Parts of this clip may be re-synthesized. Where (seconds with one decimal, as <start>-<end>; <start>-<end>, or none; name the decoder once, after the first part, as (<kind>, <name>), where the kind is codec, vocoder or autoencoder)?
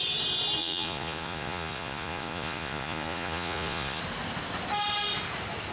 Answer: 0.6-4.0 (vocoder, Vocos)